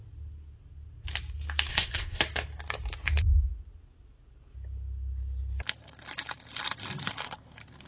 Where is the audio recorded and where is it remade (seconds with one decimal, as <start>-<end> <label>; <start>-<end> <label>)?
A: 0.0-1.7 recorded; 1.7-2.2 remade; 2.2-7.9 recorded